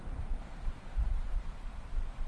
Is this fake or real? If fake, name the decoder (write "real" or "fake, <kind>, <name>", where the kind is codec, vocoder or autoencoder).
fake, vocoder, BigVGAN v2